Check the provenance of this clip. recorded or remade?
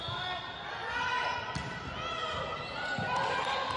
recorded